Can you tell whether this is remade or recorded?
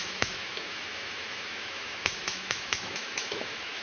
remade